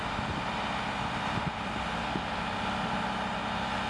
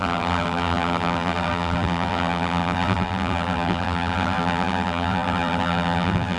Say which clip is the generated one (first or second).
second